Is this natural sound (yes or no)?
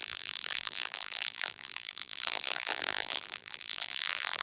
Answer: no